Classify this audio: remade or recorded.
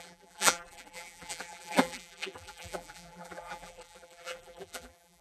remade